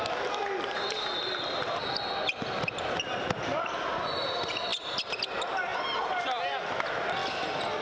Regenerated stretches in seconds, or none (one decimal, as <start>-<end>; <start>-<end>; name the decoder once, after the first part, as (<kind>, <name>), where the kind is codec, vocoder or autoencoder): none